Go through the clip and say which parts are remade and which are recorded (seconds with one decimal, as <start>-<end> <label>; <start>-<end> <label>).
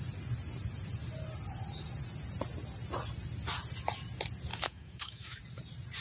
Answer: 0.0-4.5 recorded; 4.5-5.4 remade; 5.4-6.0 recorded